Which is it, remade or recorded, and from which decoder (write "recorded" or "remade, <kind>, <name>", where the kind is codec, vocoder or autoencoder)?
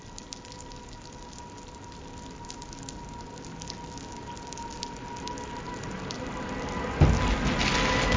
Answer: recorded